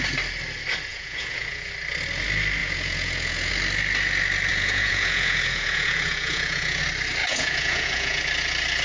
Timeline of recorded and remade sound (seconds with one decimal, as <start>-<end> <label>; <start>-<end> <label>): 0.0-0.9 recorded; 0.9-1.7 remade; 1.7-2.6 recorded; 2.6-3.5 remade; 3.5-4.5 recorded; 4.5-6.8 remade; 6.8-7.2 recorded; 7.2-8.2 remade; 8.2-8.8 recorded